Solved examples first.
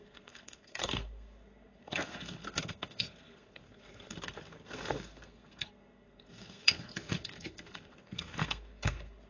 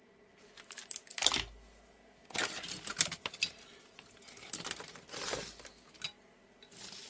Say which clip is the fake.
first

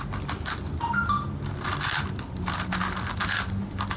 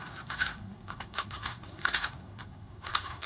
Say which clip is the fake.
second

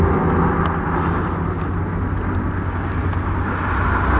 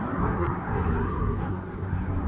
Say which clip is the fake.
second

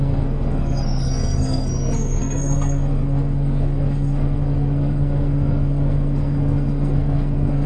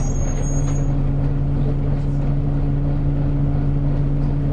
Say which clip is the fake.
first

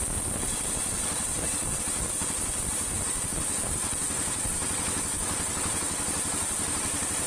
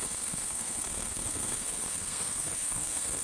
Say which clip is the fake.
second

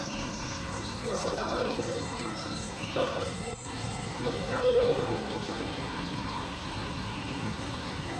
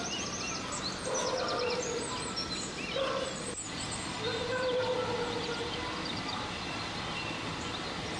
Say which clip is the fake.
first